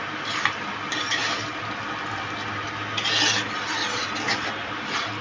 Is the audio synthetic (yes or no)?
no